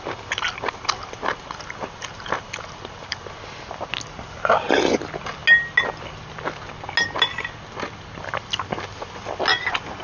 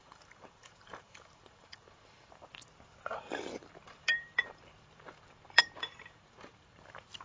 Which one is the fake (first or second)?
second